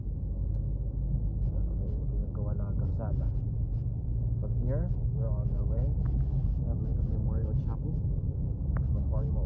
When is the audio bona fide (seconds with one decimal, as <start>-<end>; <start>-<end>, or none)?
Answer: 0.0-9.5